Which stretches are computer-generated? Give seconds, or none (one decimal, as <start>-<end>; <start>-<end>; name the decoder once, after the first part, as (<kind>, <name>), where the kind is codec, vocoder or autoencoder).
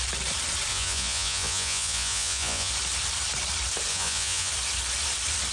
0.7-2.7 (vocoder, Vocos); 3.9-4.5